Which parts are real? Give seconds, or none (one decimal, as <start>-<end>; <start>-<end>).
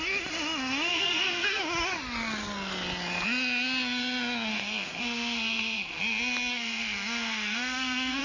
0.0-0.9; 1.6-4.5; 6.0-6.5